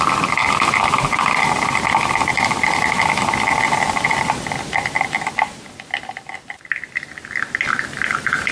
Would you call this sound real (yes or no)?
no